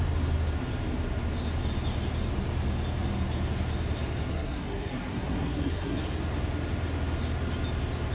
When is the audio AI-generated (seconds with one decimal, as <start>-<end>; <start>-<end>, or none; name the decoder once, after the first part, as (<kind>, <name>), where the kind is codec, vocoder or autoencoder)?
4.3-6.0 (codec, SNAC)